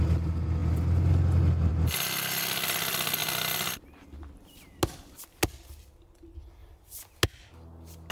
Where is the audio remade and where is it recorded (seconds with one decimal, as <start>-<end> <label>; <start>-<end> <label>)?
0.0-8.1 recorded